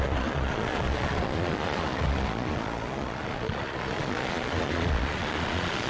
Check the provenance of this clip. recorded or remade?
remade